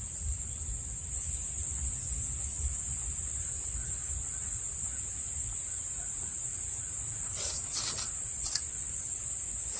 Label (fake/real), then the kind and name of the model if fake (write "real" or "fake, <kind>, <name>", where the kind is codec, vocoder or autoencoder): real